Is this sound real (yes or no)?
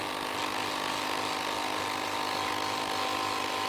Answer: yes